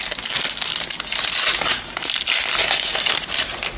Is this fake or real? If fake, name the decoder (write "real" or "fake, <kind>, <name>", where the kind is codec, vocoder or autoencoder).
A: real